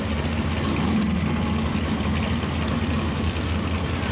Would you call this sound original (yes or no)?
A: yes